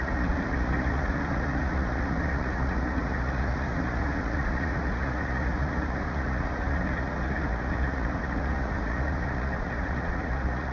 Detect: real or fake fake